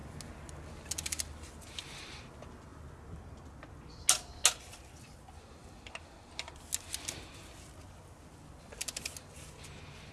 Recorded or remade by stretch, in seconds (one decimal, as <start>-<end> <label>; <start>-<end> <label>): 0.0-10.1 recorded